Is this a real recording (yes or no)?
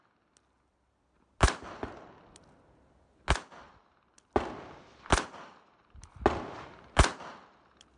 yes